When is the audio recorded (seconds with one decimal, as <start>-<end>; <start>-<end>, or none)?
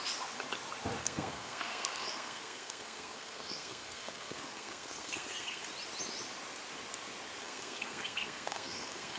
0.0-1.0; 5.6-7.4